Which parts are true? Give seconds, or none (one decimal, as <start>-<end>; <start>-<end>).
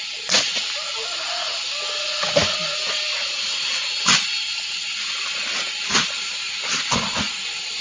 0.0-7.8